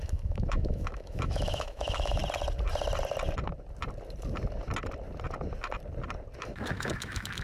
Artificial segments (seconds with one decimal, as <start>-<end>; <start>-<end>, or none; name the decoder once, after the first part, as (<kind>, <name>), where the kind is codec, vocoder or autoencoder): 0.0-2.2 (autoencoder, DAC-VAE); 6.4-7.4